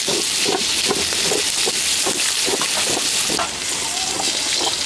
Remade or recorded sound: recorded